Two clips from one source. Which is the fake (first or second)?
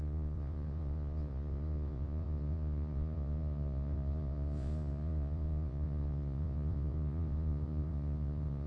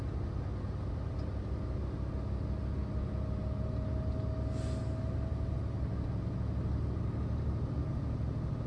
first